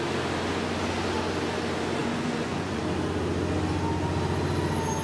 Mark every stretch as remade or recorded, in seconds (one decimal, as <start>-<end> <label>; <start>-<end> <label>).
0.0-2.0 recorded; 2.0-2.8 remade; 2.8-5.0 recorded